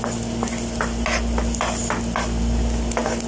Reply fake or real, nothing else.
real